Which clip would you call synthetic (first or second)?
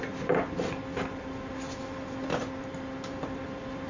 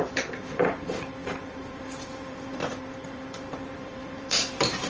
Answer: second